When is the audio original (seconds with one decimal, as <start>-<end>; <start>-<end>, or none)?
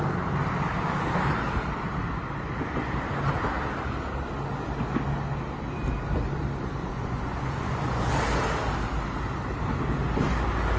0.0-6.8; 8.1-10.8